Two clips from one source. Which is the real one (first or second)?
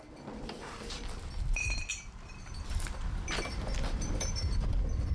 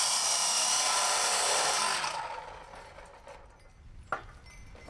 second